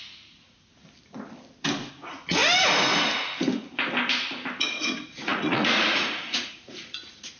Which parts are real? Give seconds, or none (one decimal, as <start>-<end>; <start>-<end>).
0.8-1.9; 2.4-4.6